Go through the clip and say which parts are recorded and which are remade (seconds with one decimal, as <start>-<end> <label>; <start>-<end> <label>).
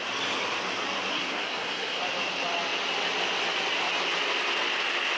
0.0-1.1 recorded; 1.1-2.0 remade; 2.0-5.2 recorded